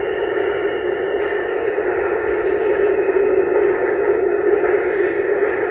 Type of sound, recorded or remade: recorded